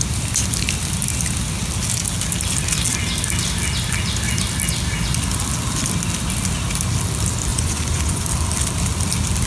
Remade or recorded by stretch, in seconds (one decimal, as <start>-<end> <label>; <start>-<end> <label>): 0.0-7.5 recorded; 7.5-8.2 remade; 8.2-9.5 recorded